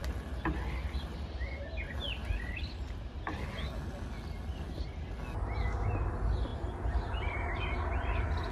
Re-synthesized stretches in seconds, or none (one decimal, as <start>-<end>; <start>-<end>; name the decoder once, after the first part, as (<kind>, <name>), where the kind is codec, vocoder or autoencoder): 4.5-5.1 (vocoder, BigVGAN v2); 6.5-7.5